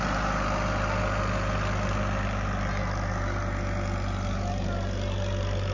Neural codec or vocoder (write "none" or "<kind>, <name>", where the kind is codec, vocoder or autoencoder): none